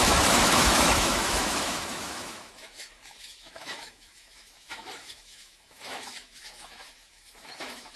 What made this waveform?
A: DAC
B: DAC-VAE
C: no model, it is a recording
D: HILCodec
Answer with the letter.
B